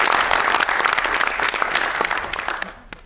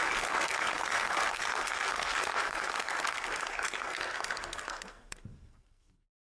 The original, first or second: first